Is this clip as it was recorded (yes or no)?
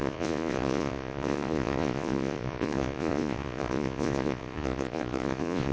no